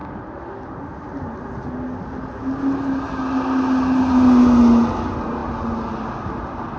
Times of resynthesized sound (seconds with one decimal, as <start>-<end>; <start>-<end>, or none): none